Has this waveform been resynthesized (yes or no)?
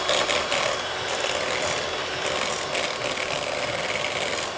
no